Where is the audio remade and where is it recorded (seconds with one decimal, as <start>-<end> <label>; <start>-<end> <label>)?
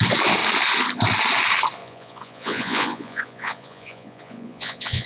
0.0-1.8 recorded; 1.8-5.1 remade